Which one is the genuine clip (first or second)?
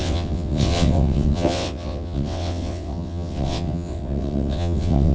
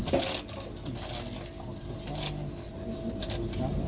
second